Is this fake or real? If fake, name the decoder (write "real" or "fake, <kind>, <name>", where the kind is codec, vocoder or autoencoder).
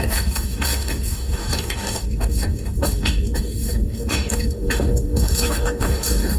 fake, codec, DAC